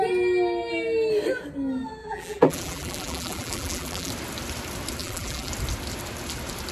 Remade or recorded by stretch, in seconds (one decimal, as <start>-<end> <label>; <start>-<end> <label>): 0.0-2.0 recorded; 2.0-4.1 remade; 4.1-5.0 recorded; 5.0-5.5 remade; 5.5-6.7 recorded